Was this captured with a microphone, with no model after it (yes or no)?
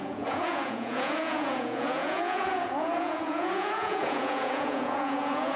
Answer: no